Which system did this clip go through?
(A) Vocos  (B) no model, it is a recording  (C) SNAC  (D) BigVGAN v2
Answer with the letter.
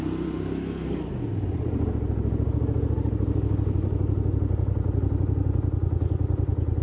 B